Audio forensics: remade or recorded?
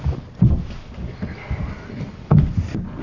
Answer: recorded